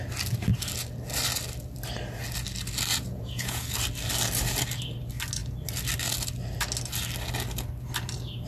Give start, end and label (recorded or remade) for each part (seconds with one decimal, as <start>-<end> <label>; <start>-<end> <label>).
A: 0.0-2.9 recorded; 2.9-3.6 remade; 3.6-8.5 recorded